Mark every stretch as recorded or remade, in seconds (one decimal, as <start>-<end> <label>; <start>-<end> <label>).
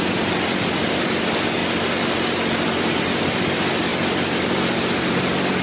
0.0-5.6 remade